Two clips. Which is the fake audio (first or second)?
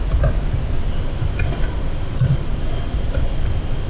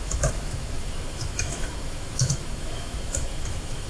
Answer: second